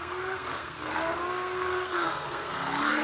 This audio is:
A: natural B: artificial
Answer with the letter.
B